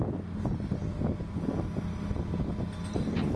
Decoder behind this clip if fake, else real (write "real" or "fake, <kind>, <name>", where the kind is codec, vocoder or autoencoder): real